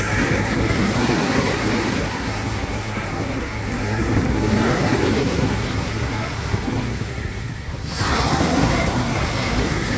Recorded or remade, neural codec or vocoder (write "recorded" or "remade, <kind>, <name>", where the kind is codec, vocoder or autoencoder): remade, codec, SNAC